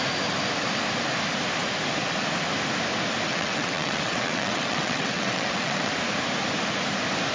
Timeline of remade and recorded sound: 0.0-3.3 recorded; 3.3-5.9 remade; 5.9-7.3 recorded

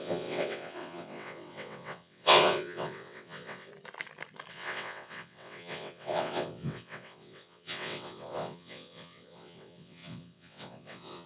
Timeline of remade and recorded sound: 0.0-3.7 remade; 3.7-4.5 recorded; 4.5-11.3 remade

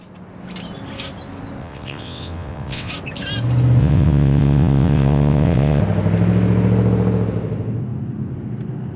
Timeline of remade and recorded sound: 0.0-1.6 recorded; 1.6-2.9 remade; 2.9-3.8 recorded; 3.8-5.8 remade; 5.8-9.0 recorded

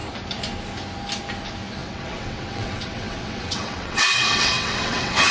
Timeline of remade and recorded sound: 0.0-1.8 recorded; 1.8-5.3 remade

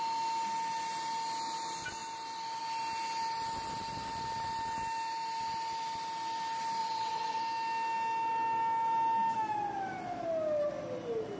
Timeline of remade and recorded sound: 0.0-6.8 recorded; 6.8-7.4 remade; 7.4-11.4 recorded